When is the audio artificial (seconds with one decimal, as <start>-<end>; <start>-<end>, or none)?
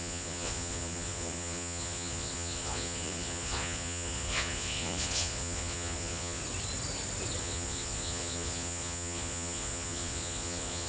0.0-6.4; 7.4-10.9